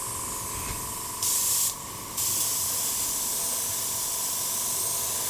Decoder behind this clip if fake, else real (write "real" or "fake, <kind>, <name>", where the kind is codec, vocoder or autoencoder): real